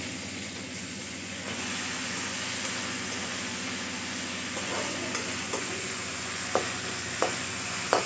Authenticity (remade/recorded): remade